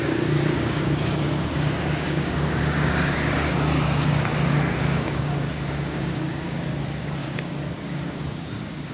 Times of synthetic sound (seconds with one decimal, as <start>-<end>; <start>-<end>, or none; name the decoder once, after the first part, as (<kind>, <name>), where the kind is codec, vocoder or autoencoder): 0.0-8.9 (codec, DAC)